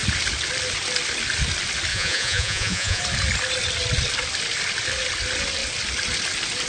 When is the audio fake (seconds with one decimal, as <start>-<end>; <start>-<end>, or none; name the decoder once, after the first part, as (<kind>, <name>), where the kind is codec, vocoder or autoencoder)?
1.9-3.0 (vocoder, Vocos)

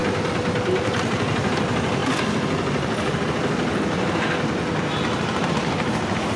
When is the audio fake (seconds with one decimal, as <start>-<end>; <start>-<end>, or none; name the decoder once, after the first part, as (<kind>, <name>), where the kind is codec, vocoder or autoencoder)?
none